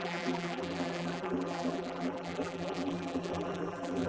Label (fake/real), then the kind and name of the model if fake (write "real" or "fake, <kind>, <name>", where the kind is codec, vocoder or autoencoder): fake, vocoder, BigVGAN v2